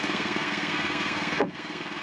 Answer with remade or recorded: remade